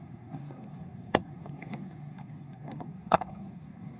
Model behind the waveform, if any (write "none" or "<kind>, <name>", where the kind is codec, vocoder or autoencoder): codec, SNAC